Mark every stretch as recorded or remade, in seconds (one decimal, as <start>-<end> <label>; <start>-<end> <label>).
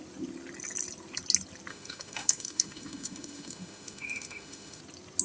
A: 0.0-1.7 recorded; 1.7-4.8 remade; 4.8-5.2 recorded